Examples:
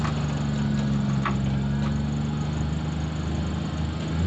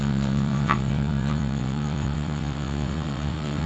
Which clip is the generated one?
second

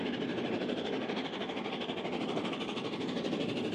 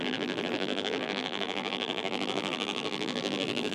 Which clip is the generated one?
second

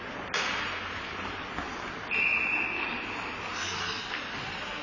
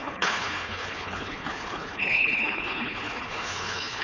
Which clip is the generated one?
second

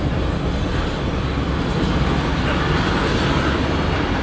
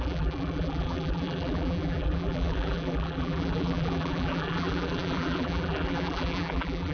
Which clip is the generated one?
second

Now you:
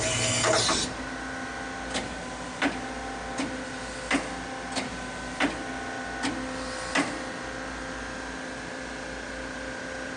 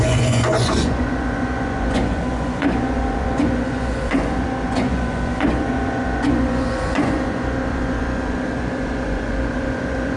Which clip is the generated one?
second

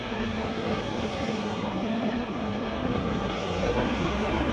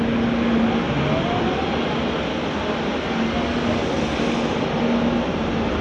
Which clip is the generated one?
first